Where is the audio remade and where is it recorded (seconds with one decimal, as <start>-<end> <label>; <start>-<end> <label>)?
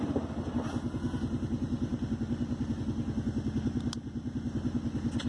0.0-5.3 recorded